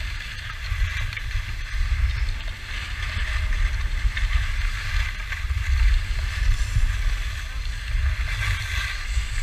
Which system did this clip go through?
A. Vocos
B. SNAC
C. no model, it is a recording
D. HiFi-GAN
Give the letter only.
C